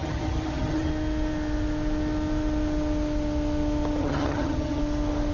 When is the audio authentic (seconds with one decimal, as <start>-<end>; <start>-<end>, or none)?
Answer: 0.9-4.0; 4.8-5.3